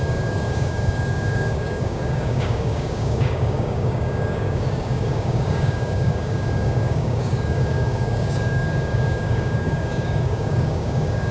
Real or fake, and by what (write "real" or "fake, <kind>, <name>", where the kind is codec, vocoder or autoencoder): fake, codec, DAC